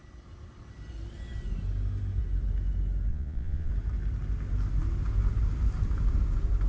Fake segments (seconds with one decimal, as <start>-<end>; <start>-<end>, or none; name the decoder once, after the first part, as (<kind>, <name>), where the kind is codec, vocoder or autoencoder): 3.1-3.7 (vocoder, Vocos)